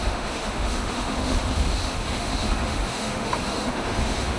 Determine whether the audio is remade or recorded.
remade